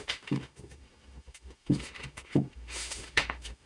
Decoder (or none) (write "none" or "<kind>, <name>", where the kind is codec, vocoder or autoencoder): autoencoder, DAC-VAE